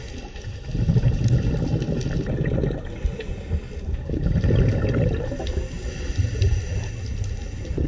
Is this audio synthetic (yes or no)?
no